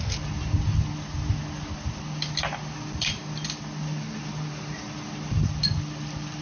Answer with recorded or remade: recorded